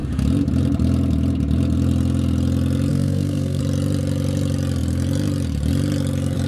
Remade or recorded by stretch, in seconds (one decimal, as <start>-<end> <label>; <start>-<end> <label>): 0.0-2.9 recorded; 2.9-3.6 remade; 3.6-6.5 recorded